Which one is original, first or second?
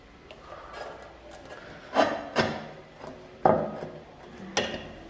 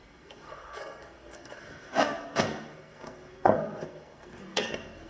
first